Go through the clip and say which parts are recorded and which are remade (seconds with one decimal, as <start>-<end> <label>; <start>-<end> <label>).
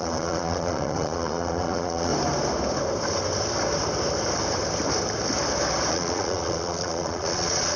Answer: 0.0-2.1 remade; 2.1-5.9 recorded; 5.9-7.8 remade